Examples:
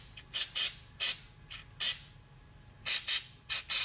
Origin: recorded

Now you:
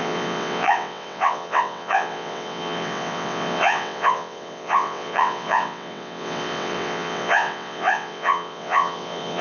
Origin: remade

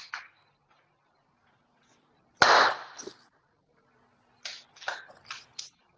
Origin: recorded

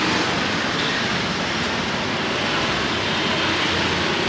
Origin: recorded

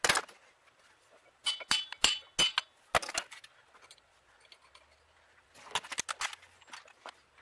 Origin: recorded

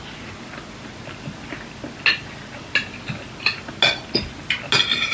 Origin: recorded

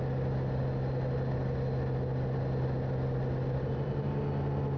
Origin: recorded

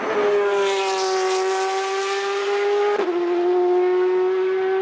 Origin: recorded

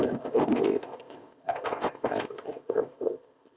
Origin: remade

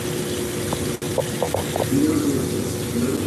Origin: recorded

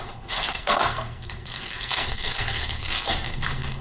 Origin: remade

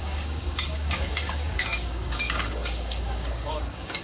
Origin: remade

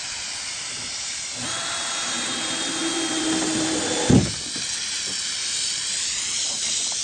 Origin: remade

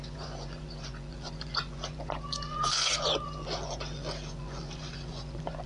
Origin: remade